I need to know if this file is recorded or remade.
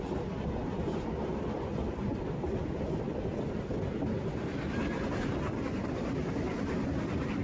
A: recorded